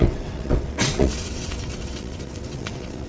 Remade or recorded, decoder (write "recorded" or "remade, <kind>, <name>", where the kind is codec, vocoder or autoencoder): remade, vocoder, WaveNeXt